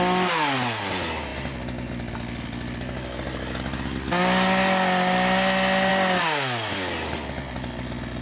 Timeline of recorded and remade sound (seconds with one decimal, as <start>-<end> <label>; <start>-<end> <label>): 0.0-8.2 recorded